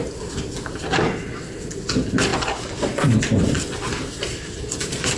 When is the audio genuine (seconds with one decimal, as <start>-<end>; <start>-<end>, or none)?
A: 0.0-5.2